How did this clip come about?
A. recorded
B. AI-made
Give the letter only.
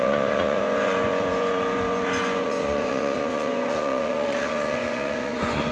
B